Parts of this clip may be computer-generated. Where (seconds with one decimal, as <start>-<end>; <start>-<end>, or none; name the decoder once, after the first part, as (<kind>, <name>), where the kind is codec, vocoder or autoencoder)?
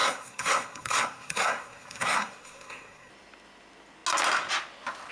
0.0-3.1 (codec, SNAC)